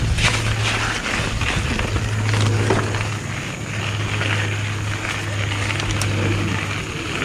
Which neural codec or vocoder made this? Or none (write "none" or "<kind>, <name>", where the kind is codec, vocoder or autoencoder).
none